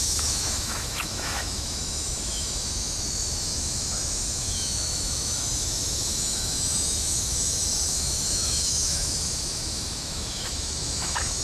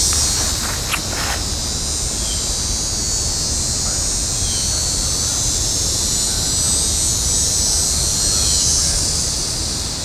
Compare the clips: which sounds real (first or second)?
second